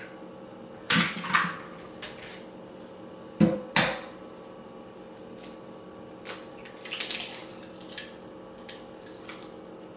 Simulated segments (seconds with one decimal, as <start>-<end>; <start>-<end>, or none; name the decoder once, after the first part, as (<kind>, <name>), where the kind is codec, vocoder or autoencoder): none